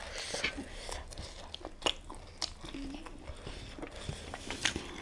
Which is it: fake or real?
real